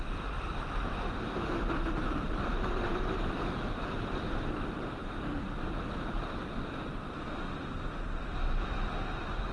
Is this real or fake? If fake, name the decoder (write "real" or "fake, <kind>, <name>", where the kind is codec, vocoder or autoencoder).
real